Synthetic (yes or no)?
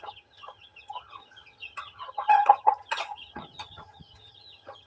yes